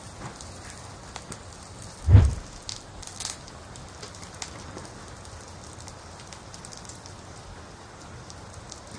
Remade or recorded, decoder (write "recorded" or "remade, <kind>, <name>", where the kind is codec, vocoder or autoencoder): recorded